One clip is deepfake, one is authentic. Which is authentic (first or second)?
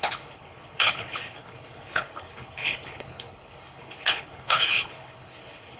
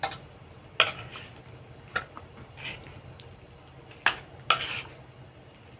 second